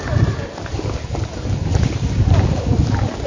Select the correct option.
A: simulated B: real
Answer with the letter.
B